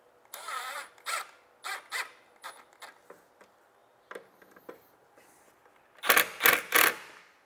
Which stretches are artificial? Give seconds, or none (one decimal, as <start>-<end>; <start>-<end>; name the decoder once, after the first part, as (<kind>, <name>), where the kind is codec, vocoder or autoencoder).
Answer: none